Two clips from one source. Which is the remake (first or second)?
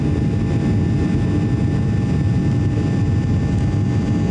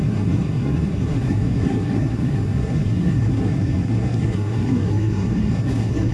second